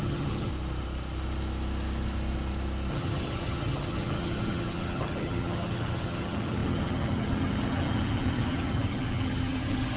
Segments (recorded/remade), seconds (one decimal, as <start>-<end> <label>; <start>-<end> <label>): 0.0-0.5 remade; 0.5-2.9 recorded; 2.9-10.0 remade